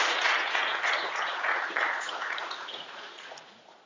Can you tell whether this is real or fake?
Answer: fake